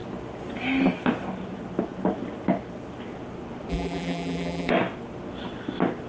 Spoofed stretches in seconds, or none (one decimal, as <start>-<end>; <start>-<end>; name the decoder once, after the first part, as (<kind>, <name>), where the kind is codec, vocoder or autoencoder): 3.7-4.7 (vocoder, BigVGAN v2)